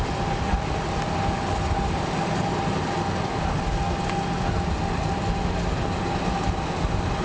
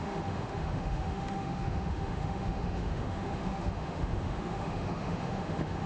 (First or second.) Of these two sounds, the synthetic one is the second